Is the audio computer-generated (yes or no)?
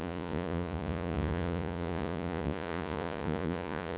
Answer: yes